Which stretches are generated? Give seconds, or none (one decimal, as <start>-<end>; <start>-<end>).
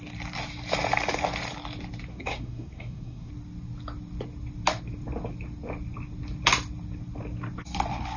2.1-3.3